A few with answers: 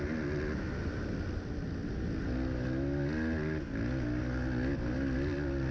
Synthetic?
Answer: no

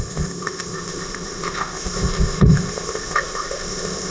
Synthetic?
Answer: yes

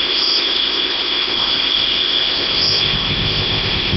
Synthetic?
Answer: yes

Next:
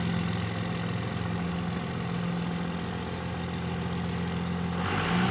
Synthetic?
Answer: no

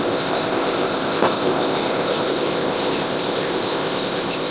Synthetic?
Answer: yes